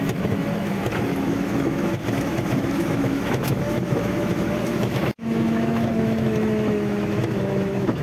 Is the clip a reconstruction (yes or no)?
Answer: yes